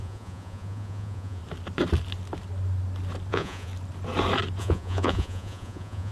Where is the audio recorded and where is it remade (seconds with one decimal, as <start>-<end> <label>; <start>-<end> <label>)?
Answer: 0.0-1.4 remade; 1.4-3.3 recorded; 3.3-3.7 remade; 3.7-4.6 recorded; 4.6-6.1 remade